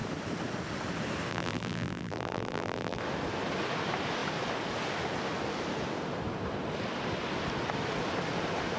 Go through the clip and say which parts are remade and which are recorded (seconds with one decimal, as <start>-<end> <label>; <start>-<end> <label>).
0.0-1.3 recorded; 1.3-3.0 remade; 3.0-8.8 recorded